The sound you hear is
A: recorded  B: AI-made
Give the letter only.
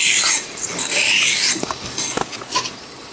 A